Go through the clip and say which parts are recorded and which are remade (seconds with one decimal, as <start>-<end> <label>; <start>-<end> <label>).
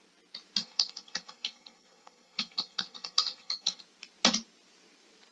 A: 0.0-0.6 recorded; 0.6-3.8 remade; 3.8-5.3 recorded